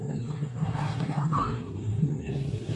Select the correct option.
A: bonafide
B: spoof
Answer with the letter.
B